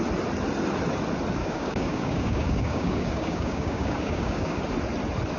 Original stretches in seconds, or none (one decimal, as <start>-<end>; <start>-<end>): 0.0-1.4; 4.6-5.4